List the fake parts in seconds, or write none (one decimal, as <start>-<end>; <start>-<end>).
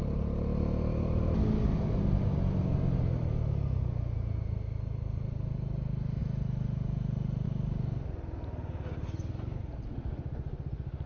none